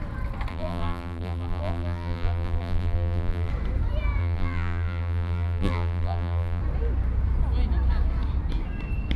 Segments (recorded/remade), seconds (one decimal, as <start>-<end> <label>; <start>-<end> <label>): 0.0-0.5 recorded; 0.5-3.5 remade; 3.5-4.2 recorded; 4.2-6.6 remade; 6.6-9.2 recorded